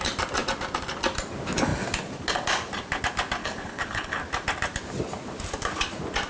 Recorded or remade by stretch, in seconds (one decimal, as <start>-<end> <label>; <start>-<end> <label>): 0.0-3.4 recorded; 3.4-4.2 remade; 4.2-6.3 recorded